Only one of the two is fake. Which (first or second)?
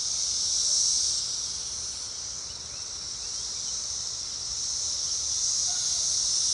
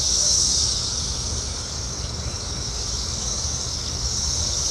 second